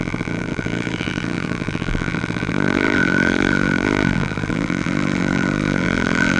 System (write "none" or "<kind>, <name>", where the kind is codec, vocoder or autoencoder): vocoder, BigVGAN v2